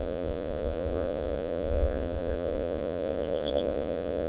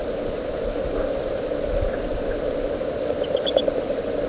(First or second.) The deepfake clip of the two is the first